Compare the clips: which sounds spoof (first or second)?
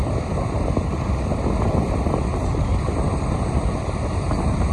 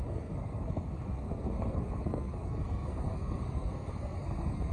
second